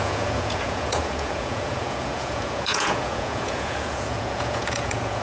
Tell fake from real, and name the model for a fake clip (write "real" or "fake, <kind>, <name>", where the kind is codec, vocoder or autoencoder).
fake, vocoder, Vocos